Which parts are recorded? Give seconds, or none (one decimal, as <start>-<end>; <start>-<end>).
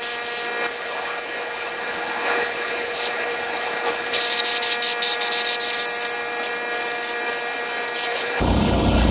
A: 0.0-0.7; 4.2-8.1